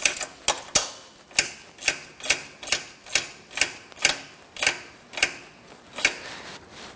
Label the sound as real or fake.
real